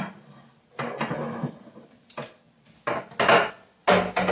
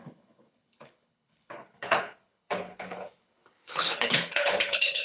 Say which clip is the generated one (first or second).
second